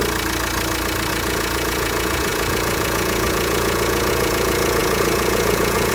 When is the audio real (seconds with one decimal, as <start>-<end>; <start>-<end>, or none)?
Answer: 0.0-1.1